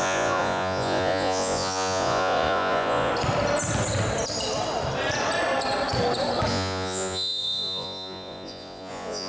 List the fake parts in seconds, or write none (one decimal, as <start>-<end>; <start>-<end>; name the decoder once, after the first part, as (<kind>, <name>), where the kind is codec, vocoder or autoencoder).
0.0-3.1 (vocoder, Vocos); 6.5-9.3